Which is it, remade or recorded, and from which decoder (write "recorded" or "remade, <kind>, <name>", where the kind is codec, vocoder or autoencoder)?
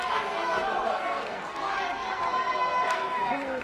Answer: remade, codec, SNAC